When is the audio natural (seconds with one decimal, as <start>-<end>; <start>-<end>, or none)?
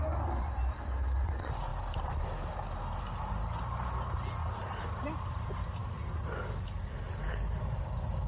0.0-8.3